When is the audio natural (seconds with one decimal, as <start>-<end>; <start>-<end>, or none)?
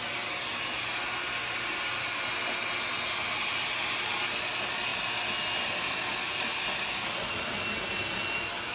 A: 0.0-4.9; 7.1-8.7